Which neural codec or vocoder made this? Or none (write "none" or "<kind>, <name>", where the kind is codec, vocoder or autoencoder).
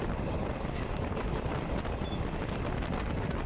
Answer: none